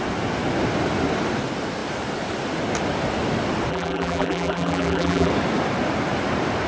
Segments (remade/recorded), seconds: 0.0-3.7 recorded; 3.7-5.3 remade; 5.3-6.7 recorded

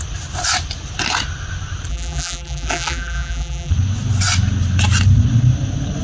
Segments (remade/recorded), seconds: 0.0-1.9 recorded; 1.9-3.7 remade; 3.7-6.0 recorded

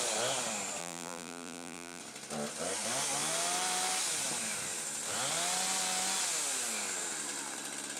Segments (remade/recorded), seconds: 0.0-0.8 recorded; 0.8-2.0 remade; 2.0-8.0 recorded

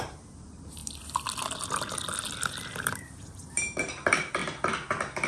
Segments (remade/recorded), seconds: 0.0-0.8 remade; 0.8-2.8 recorded; 2.8-4.4 remade; 4.4-5.3 recorded

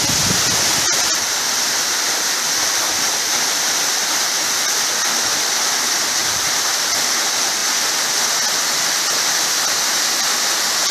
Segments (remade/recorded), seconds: 0.0-10.9 recorded

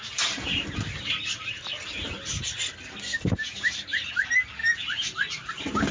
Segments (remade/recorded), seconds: 0.0-3.1 recorded; 3.1-4.1 remade; 4.1-4.6 recorded; 4.6-5.5 remade; 5.5-5.9 recorded

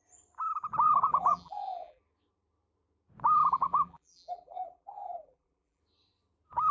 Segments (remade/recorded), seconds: 0.0-1.1 recorded; 1.1-2.0 remade; 2.0-3.4 recorded; 3.4-5.8 remade; 5.8-6.7 recorded

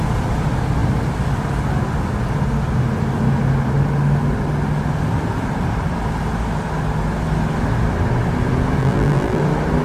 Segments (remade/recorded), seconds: 0.0-8.8 recorded; 8.8-9.4 remade; 9.4-9.8 recorded